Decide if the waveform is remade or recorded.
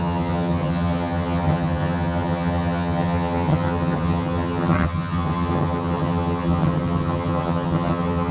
remade